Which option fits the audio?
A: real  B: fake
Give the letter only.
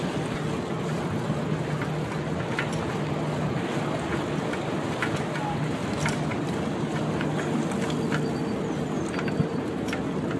A